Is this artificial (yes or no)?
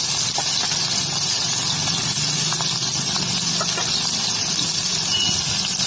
no